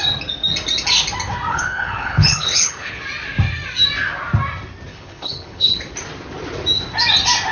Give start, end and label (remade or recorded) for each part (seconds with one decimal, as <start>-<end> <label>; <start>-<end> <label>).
0.0-1.5 recorded; 1.5-3.0 remade; 3.0-4.9 recorded; 4.9-5.8 remade; 5.8-7.5 recorded

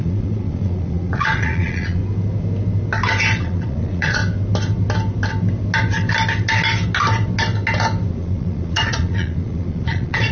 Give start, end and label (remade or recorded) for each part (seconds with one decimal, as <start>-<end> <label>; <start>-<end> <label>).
0.0-2.0 remade; 2.0-3.4 recorded; 3.4-4.2 remade; 4.2-8.1 recorded; 8.1-10.3 remade